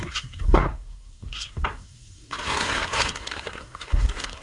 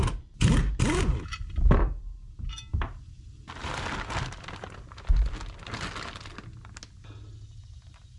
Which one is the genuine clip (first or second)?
second